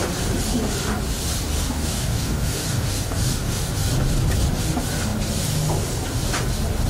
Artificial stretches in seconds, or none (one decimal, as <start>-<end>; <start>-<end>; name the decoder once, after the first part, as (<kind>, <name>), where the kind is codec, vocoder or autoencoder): 1.6-3.9 (codec, DAC)